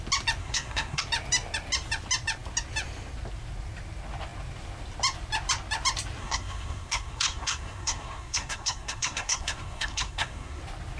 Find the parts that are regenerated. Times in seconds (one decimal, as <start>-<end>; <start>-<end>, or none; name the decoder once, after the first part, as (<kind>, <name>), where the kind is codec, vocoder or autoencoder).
0.4-1.0 (codec, SNAC); 6.2-10.6